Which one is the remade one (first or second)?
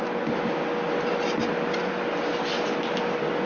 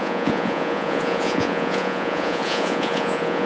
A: second